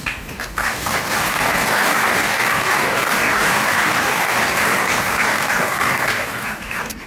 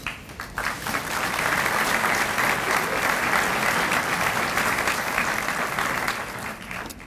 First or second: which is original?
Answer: second